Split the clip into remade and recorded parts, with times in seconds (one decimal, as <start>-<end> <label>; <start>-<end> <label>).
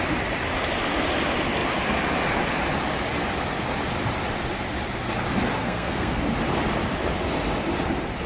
0.0-5.6 recorded; 5.6-6.2 remade; 6.2-8.3 recorded